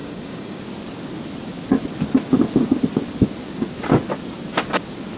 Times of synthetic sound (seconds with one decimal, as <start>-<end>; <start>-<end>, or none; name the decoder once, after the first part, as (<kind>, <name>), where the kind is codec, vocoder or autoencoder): 0.0-0.6 (codec, DAC)